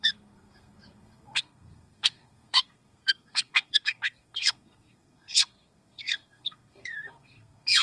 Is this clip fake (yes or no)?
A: yes